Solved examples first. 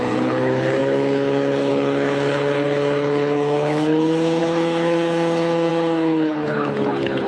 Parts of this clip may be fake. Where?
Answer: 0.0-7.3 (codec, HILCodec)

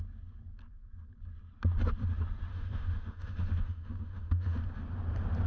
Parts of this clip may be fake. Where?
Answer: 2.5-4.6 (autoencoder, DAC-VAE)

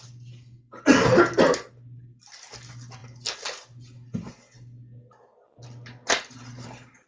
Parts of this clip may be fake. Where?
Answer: none